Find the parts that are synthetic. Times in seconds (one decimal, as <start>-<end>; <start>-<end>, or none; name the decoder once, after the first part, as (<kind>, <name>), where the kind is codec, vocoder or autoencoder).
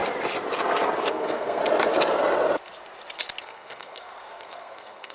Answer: 1.1-1.6 (codec, SNAC); 3.4-5.1